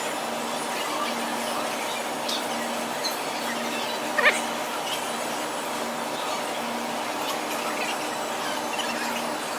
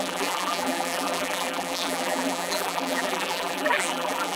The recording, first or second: first